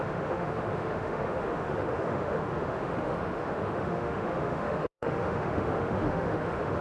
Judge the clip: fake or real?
fake